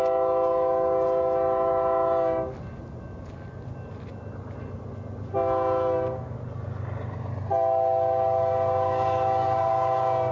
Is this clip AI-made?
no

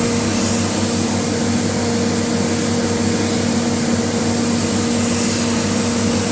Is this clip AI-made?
no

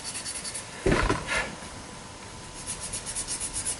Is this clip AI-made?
no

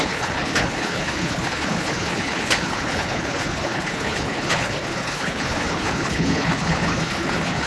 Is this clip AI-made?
yes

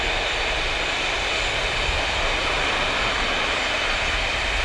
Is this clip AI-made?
no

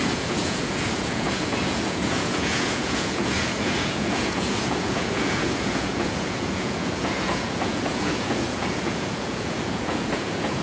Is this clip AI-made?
yes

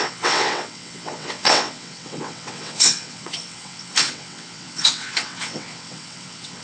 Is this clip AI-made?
yes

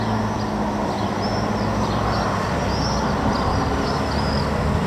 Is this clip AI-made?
no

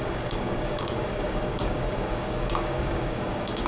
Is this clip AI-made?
yes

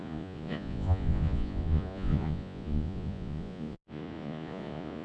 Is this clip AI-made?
yes